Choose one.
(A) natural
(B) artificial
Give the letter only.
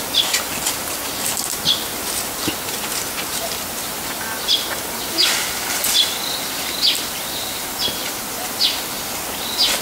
A